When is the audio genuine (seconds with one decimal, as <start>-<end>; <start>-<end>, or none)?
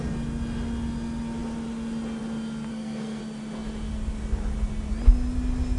0.0-2.7; 3.2-5.8